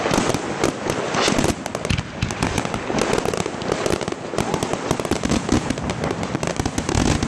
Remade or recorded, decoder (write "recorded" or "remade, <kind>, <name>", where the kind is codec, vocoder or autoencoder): recorded